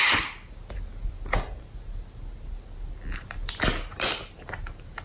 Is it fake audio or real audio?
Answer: real